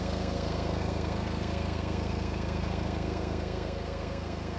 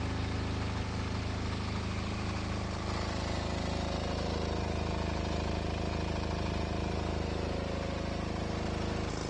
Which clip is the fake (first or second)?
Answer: first